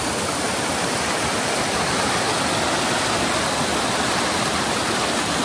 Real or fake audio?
real